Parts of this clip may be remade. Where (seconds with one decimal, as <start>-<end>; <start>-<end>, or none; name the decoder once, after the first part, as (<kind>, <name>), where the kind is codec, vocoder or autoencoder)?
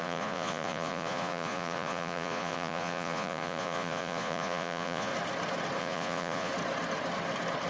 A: 0.0-5.1 (vocoder, Vocos); 5.8-6.5